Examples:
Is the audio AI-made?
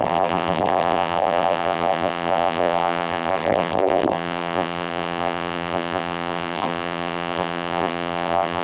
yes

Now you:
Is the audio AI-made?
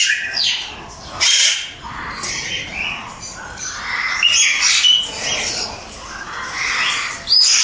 no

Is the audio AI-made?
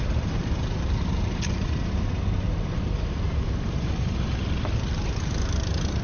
yes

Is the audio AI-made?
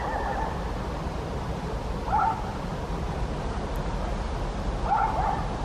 no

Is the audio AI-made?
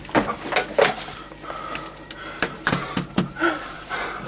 no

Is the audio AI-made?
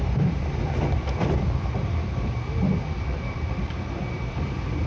yes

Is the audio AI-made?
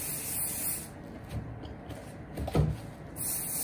no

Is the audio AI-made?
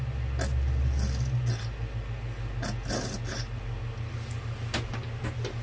no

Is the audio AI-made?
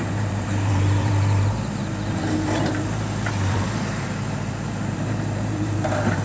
yes